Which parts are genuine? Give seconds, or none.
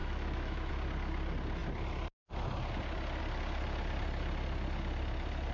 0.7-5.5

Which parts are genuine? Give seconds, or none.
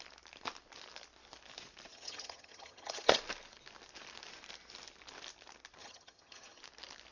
0.0-1.9; 3.2-5.8; 6.6-7.1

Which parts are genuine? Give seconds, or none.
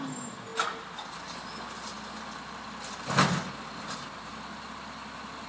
0.0-5.5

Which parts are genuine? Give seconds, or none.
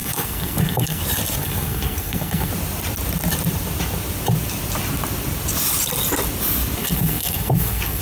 1.0-1.4; 2.5-6.8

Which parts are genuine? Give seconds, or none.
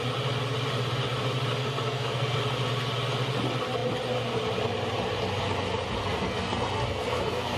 0.0-1.6; 2.4-6.0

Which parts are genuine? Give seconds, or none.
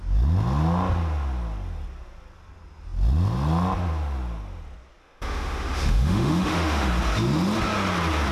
0.0-5.0; 6.9-8.3